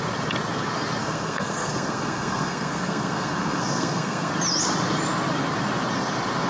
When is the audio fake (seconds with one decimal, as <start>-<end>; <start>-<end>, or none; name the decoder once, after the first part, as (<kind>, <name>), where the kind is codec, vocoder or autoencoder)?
1.0-4.3 (codec, SNAC)